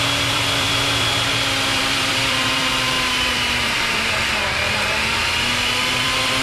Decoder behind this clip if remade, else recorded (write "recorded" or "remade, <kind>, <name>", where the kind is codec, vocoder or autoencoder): remade, vocoder, BigVGAN v2